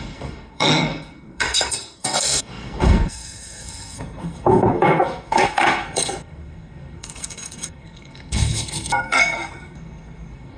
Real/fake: fake